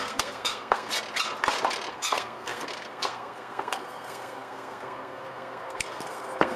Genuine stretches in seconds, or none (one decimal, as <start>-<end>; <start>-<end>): 0.9-1.9